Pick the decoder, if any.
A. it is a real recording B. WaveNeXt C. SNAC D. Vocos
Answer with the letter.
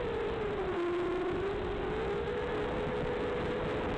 A